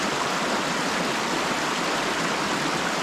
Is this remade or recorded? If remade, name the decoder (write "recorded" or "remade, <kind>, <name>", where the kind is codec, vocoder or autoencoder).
recorded